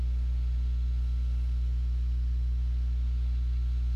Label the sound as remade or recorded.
remade